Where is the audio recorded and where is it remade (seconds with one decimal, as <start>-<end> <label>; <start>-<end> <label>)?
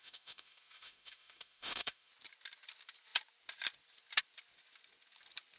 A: 0.0-2.1 remade; 2.1-5.6 recorded